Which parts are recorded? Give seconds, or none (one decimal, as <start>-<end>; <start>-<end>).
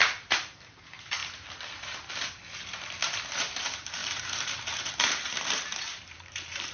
1.2-3.4